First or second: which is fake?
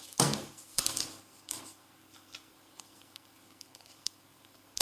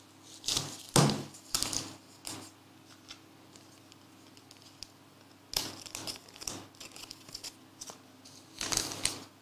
first